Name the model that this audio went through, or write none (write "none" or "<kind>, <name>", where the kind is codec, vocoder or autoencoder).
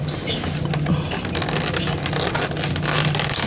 none